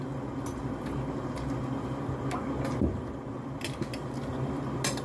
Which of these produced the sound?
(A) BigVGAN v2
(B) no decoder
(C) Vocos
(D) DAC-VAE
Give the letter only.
B